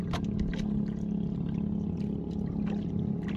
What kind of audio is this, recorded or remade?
recorded